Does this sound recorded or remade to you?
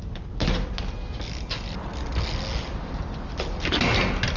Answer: recorded